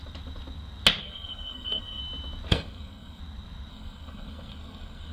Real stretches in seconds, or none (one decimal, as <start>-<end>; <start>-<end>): 0.0-1.0; 2.0-2.5; 3.2-3.7